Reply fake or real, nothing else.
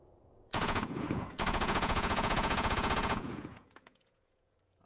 fake